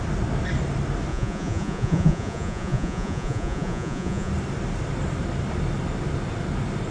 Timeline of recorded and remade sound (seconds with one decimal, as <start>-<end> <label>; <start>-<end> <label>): 0.0-1.1 recorded; 1.1-4.3 remade; 4.3-6.9 recorded